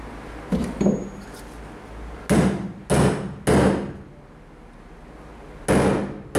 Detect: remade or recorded recorded